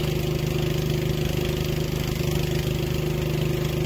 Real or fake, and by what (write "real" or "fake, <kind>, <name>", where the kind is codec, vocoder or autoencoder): real